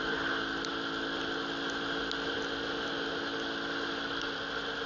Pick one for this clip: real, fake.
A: real